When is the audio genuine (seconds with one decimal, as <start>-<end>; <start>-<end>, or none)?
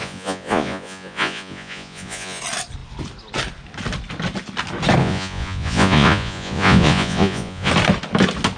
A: 2.4-5.0; 7.7-8.6